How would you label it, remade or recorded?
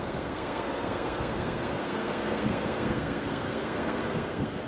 remade